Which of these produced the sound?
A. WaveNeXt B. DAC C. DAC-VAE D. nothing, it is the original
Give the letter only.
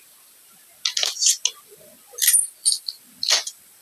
D